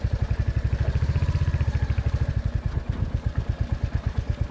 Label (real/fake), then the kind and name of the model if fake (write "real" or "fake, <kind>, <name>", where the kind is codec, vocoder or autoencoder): real